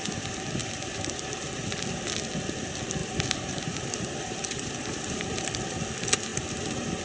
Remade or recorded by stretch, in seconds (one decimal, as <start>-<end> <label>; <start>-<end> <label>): 0.0-0.6 recorded; 0.6-2.0 remade; 2.0-3.0 recorded; 3.0-5.5 remade; 5.5-6.3 recorded; 6.3-7.0 remade